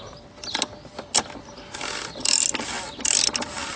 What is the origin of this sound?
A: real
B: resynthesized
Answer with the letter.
A